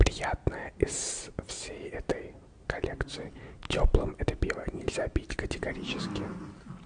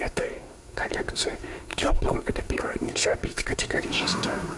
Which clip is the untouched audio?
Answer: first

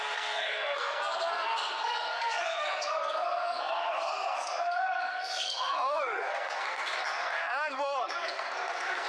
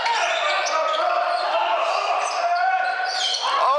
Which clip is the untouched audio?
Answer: second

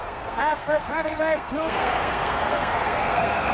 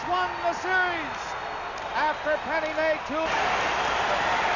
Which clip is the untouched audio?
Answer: second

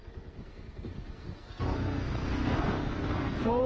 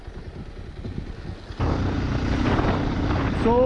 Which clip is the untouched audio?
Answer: second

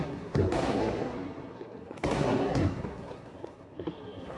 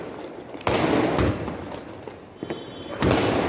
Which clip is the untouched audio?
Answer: second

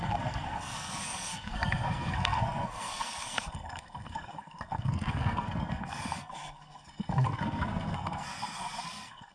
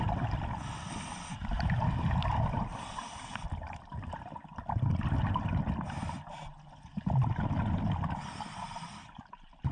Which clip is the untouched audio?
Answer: second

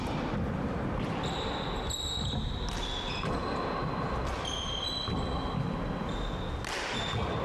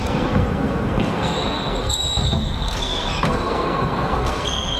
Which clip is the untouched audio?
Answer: first